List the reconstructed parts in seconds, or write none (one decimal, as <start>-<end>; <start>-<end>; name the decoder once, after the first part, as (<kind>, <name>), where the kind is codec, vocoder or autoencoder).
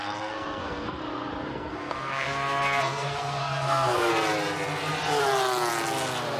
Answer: 0.0-1.0 (codec, SNAC); 1.5-4.1